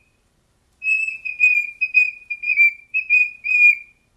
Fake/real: fake